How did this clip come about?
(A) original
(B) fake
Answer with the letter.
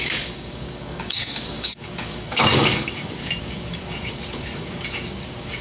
B